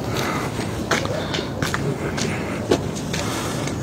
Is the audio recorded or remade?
remade